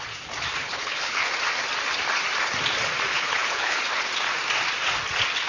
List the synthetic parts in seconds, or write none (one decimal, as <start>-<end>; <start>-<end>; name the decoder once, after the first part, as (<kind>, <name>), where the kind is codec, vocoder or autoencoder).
0.6-1.3 (codec, HILCodec); 3.1-3.8